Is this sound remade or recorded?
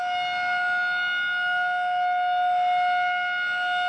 recorded